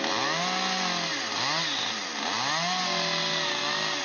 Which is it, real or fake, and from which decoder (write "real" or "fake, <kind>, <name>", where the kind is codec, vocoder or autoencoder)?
real